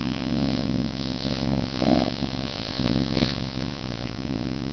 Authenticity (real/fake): fake